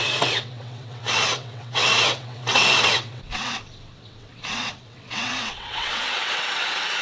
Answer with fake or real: fake